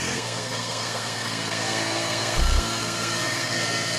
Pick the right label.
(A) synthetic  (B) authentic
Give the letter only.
A